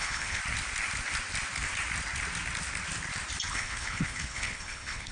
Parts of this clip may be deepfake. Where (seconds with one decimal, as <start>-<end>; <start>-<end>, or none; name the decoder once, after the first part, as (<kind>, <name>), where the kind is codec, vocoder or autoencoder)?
0.0-0.4 (codec, HILCodec); 3.5-5.1